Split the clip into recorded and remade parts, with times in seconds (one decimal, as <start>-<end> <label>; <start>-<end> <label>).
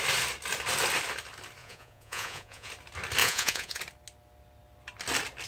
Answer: 0.0-1.6 recorded; 1.6-2.7 remade; 2.7-3.2 recorded; 3.2-3.8 remade; 3.8-5.5 recorded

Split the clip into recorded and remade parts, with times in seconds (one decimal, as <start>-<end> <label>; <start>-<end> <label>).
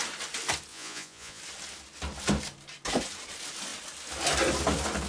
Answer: 0.0-0.7 recorded; 0.7-1.4 remade; 1.4-5.1 recorded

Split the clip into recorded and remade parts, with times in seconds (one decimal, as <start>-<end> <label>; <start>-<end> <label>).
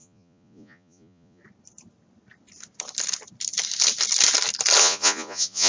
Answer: 0.0-1.4 remade; 1.4-4.8 recorded; 4.8-5.7 remade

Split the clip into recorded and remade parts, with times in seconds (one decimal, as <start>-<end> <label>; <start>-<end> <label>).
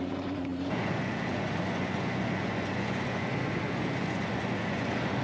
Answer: 0.0-5.2 remade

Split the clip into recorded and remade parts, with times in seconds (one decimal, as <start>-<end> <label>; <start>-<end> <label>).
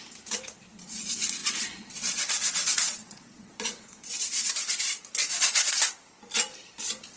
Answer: 0.0-1.4 recorded; 1.4-5.7 remade; 5.7-7.2 recorded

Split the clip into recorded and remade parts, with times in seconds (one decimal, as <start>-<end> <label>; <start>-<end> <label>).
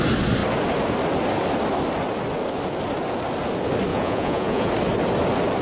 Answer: 0.0-3.9 recorded; 3.9-4.7 remade; 4.7-5.6 recorded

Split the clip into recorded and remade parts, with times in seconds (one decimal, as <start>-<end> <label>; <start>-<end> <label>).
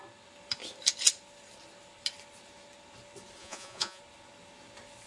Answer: 0.0-3.4 recorded; 3.4-4.0 remade; 4.0-5.1 recorded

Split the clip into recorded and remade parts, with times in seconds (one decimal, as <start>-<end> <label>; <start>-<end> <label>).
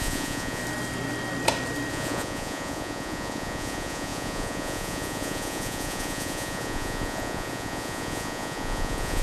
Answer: 0.0-0.6 remade; 0.6-1.9 recorded; 1.9-9.2 remade